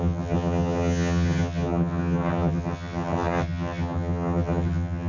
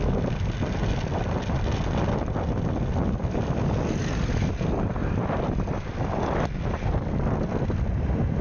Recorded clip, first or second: second